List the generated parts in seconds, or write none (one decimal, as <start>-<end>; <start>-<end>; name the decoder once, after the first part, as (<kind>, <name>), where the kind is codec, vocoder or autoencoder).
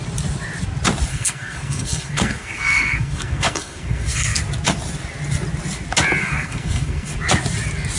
1.1-4.4 (codec, SNAC); 6.2-7.1